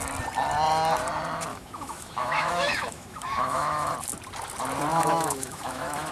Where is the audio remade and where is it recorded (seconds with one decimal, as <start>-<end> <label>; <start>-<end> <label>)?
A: 0.0-1.5 recorded; 1.5-3.9 remade; 3.9-4.9 recorded; 4.9-6.1 remade